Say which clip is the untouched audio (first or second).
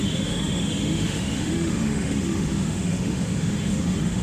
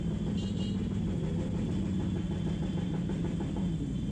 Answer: second